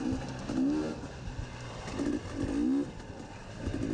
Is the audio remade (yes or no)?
no